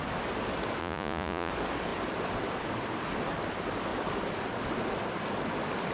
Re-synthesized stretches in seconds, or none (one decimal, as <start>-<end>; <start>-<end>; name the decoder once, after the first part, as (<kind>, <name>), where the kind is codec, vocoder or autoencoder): 0.8-1.5 (vocoder, Vocos)